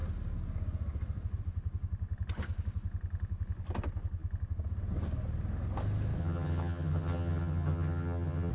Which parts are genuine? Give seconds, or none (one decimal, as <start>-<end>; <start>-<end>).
0.0-6.2